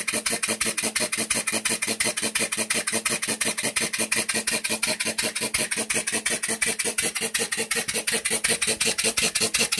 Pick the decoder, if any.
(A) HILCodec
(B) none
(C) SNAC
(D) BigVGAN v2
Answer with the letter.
B